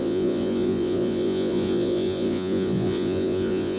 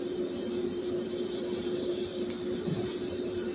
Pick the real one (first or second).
second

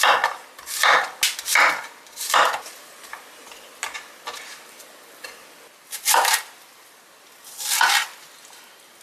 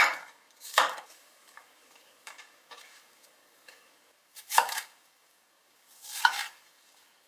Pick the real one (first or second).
first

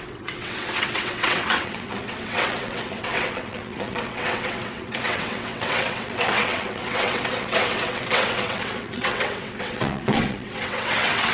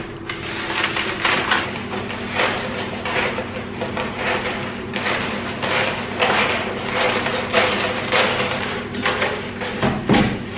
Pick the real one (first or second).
second